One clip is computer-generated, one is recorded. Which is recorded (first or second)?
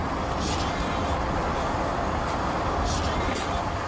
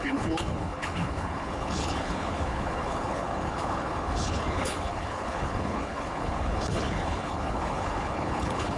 first